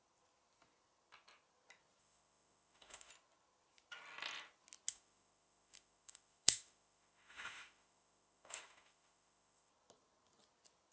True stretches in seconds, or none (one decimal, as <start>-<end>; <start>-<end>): 0.0-2.0; 3.1-4.9; 9.7-10.9